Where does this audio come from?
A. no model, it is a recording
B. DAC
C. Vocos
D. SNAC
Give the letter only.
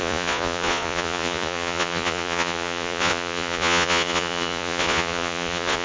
C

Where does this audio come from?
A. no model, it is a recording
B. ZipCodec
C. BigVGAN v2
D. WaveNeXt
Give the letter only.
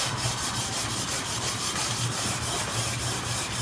C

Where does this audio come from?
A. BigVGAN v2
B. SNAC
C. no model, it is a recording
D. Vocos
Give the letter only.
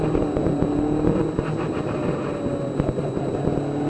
C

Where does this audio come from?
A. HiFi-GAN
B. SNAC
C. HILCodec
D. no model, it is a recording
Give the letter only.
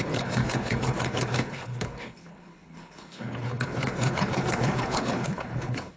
C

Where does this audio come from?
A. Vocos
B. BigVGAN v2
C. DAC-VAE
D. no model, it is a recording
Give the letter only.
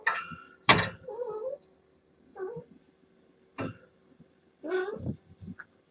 D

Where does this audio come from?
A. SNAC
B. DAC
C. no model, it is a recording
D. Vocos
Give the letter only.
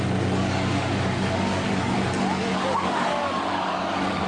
B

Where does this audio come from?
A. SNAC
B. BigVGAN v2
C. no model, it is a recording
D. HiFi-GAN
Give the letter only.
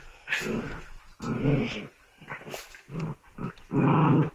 C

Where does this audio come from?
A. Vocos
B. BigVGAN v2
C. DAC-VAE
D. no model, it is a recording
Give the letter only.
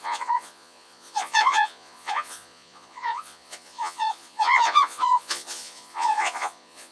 A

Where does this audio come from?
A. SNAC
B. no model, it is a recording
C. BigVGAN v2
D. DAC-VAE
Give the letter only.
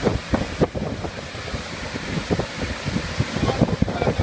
B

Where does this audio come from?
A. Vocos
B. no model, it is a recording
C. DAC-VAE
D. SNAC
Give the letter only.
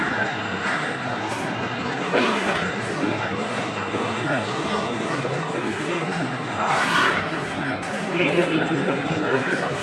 D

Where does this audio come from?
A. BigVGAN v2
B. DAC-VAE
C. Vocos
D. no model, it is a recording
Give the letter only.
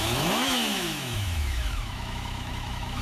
B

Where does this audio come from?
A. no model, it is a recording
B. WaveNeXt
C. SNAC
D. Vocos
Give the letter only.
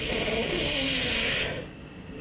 A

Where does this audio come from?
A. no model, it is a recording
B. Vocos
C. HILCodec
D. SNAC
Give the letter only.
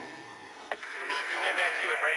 D